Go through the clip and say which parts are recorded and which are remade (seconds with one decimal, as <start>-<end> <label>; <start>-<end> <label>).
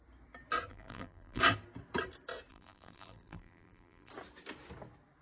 0.0-0.7 recorded; 0.7-1.4 remade; 1.4-2.5 recorded; 2.5-4.1 remade; 4.1-5.2 recorded